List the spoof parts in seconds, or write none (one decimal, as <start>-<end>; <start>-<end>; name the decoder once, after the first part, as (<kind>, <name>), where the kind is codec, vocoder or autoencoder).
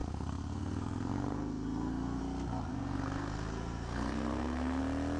0.0-2.2 (codec, SNAC); 2.7-4.8